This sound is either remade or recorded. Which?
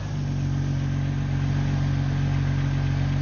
recorded